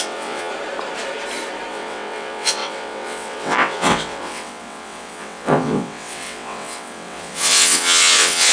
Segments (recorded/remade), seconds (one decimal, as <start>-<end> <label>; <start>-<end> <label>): 0.0-0.5 remade; 0.5-1.7 recorded; 1.7-8.5 remade